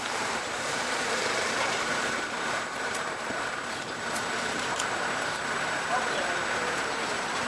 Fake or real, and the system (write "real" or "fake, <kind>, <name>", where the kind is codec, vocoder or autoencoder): fake, vocoder, BigVGAN v2